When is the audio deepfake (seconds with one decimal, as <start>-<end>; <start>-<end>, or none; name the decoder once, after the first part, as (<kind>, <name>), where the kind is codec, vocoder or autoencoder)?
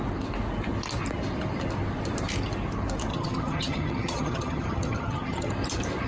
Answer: 3.1-5.5 (vocoder, HiFi-GAN)